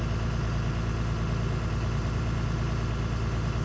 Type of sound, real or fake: real